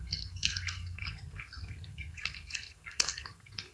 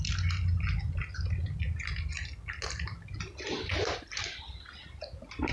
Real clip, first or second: second